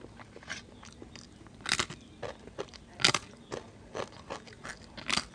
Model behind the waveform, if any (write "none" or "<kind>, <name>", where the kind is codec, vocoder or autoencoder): none